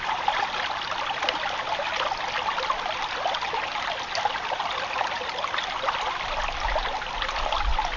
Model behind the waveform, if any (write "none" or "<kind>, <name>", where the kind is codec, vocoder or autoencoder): none